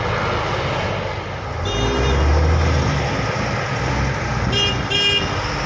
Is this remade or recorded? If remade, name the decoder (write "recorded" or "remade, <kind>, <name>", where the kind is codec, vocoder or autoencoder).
recorded